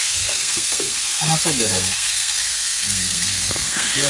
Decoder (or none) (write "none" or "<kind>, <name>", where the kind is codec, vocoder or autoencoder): codec, SNAC